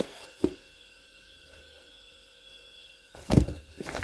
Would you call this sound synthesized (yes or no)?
yes